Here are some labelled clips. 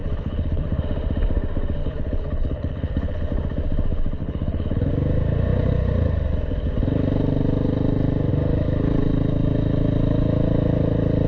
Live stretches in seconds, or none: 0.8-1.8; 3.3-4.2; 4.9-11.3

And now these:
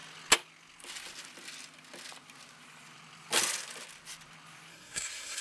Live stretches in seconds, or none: 0.0-4.7

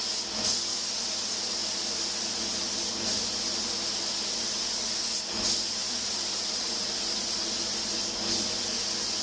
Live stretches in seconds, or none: 0.0-5.8; 7.5-9.2

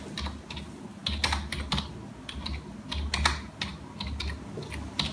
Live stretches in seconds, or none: 0.0-5.1

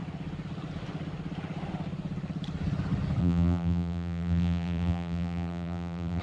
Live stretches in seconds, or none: 0.0-3.2

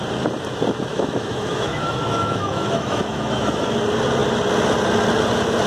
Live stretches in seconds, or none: 0.0-0.9; 3.6-5.7